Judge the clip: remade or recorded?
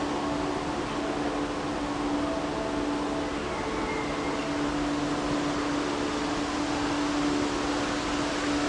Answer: recorded